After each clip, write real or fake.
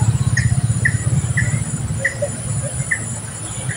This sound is real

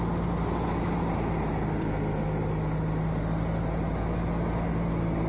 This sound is real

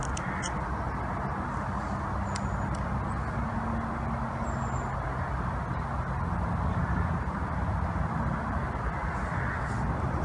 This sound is real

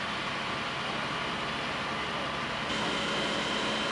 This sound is real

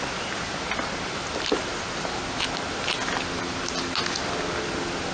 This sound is real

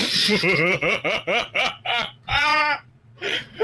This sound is fake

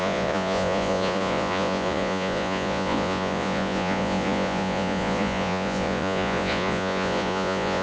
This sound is fake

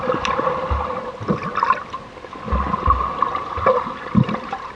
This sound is real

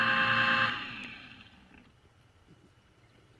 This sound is real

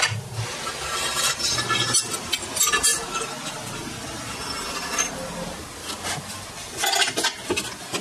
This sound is real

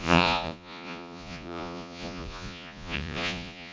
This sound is fake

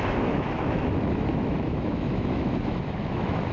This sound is fake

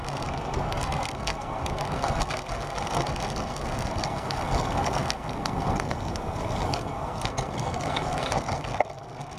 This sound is fake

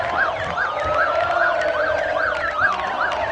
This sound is real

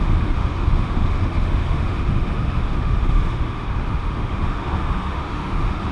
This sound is fake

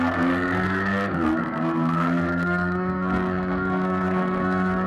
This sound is fake